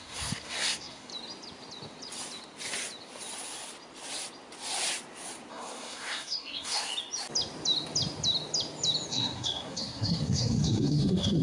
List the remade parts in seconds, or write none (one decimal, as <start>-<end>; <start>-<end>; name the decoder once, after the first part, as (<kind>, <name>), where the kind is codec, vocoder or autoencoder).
0.0-1.1 (codec, SNAC); 5.5-6.9; 9.1-11.4